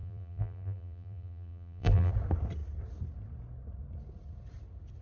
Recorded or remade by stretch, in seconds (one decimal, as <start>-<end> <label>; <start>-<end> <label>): 0.0-2.1 remade; 2.1-5.0 recorded